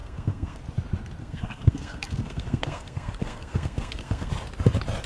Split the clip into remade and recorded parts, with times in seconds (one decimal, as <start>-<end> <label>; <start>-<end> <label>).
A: 0.0-0.6 remade; 0.6-1.2 recorded; 1.2-4.3 remade; 4.3-5.1 recorded